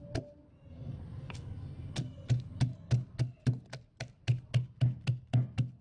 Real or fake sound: real